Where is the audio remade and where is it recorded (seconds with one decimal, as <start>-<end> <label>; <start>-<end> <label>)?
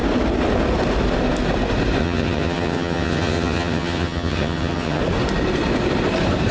0.0-2.0 recorded; 2.0-5.0 remade; 5.0-6.5 recorded